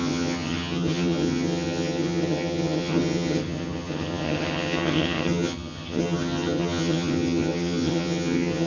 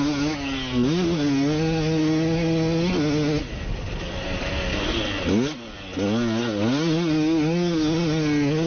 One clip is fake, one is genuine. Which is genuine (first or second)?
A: second